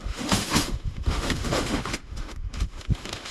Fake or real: fake